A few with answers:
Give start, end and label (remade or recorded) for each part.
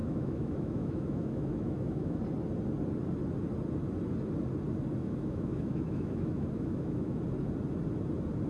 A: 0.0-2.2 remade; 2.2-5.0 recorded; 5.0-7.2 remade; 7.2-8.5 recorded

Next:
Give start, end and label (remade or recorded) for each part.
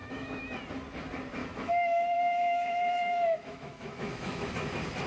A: 0.0-0.6 remade; 0.6-1.4 recorded; 1.4-4.5 remade; 4.5-5.1 recorded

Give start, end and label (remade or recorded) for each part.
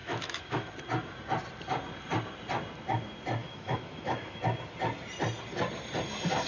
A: 0.0-0.7 remade; 0.7-3.4 recorded; 3.4-4.4 remade; 4.4-6.5 recorded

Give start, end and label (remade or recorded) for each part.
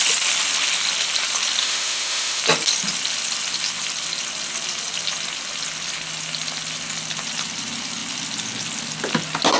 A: 0.0-1.6 recorded; 1.6-2.4 remade; 2.4-9.6 recorded